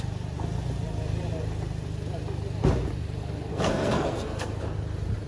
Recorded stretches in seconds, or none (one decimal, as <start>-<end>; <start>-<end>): 0.0-3.5; 4.6-5.3